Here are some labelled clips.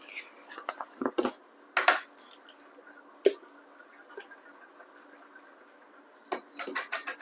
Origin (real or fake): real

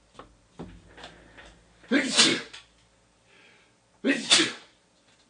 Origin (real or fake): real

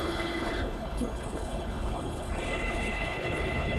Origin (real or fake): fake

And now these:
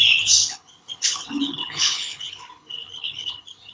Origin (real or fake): fake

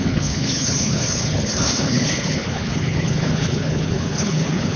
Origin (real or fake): fake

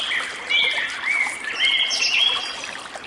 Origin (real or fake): real